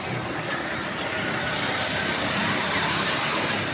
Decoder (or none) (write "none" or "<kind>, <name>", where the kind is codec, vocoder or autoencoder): none